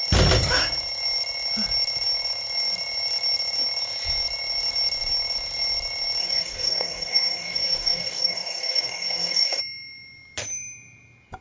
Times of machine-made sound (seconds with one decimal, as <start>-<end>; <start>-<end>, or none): 6.2-9.6